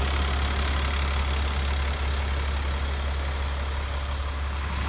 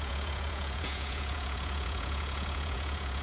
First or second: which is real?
first